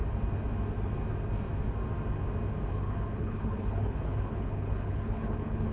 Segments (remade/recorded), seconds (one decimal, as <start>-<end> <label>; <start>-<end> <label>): 0.0-2.7 recorded; 2.7-5.7 remade